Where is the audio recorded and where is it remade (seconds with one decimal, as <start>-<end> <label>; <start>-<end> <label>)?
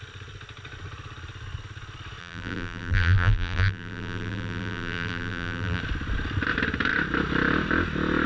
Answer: 0.0-2.2 recorded; 2.2-5.8 remade; 5.8-8.3 recorded